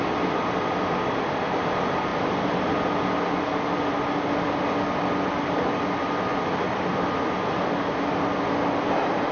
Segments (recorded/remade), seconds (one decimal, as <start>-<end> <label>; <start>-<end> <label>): 0.0-9.3 recorded